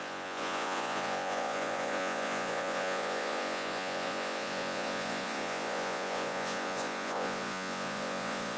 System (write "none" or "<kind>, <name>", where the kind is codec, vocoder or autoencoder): vocoder, Vocos